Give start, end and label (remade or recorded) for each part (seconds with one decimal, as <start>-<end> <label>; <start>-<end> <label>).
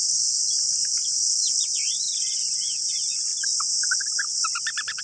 0.0-5.0 recorded